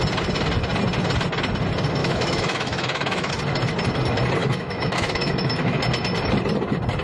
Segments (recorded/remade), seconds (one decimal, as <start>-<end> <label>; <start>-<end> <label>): 0.0-2.0 recorded; 2.0-3.3 remade; 3.3-4.4 recorded; 4.4-5.8 remade; 5.8-7.0 recorded